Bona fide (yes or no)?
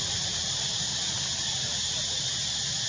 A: yes